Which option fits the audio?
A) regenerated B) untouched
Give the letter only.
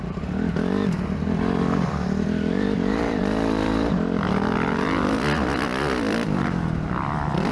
A